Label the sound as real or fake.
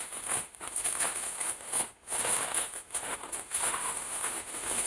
fake